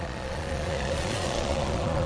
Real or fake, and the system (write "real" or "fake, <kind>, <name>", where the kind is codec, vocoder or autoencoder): fake, vocoder, Vocos